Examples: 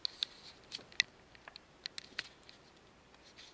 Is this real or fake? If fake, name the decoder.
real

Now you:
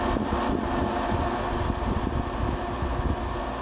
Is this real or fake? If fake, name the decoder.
real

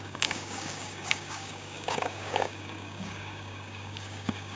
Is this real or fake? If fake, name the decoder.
fake, codec, DAC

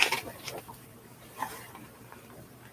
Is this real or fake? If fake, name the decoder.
fake, vocoder, BigVGAN v2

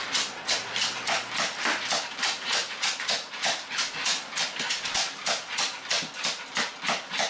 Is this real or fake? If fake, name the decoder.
real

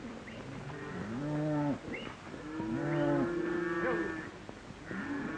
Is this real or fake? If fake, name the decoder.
real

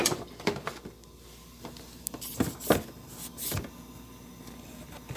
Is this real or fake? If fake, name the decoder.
real